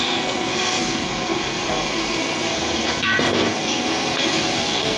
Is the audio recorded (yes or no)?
no